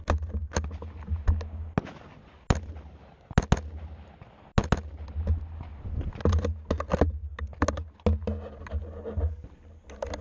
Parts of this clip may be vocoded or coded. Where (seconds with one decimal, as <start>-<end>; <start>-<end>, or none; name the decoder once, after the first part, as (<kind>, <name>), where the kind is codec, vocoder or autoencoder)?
none